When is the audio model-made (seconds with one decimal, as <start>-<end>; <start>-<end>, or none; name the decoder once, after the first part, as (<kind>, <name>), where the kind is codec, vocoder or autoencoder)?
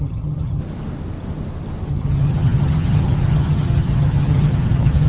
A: 0.0-0.6 (vocoder, HiFi-GAN); 1.9-5.1